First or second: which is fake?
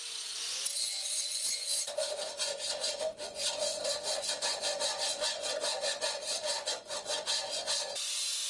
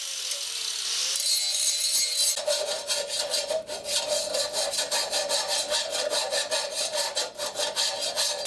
first